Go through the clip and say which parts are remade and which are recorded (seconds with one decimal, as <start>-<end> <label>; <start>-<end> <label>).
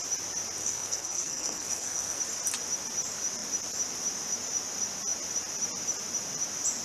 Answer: 0.0-0.6 recorded; 0.6-2.2 remade; 2.2-6.8 recorded